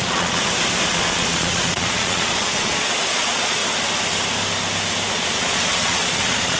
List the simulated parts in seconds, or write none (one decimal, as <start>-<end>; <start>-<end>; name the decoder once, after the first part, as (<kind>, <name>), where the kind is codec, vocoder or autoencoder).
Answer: 0.0-0.4 (vocoder, Vocos); 0.9-3.6; 5.1-6.6